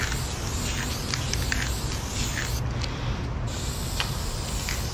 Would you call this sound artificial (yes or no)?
no